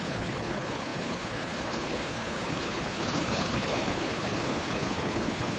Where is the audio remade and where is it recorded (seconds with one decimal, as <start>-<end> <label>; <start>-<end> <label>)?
0.0-5.6 remade